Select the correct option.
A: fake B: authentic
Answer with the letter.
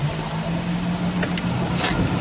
B